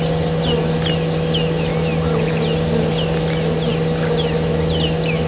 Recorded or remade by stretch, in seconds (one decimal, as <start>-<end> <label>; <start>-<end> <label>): 0.0-5.3 recorded